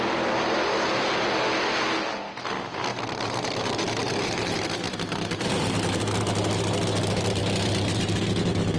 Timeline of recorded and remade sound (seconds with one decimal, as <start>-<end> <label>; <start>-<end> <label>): 0.0-2.9 recorded; 2.9-6.0 remade; 6.0-8.8 recorded